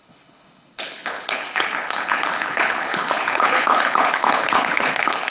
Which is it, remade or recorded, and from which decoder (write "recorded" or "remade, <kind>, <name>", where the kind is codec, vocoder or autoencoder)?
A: remade, codec, HILCodec